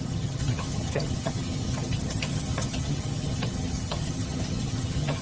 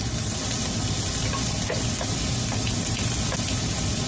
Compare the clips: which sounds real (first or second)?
second